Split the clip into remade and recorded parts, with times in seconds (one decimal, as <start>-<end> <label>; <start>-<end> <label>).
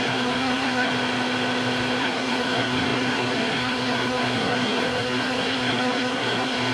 0.0-0.9 remade; 0.9-2.0 recorded; 2.0-6.7 remade